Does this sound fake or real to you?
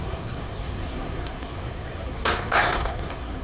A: fake